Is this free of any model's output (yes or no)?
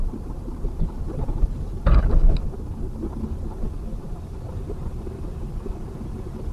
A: yes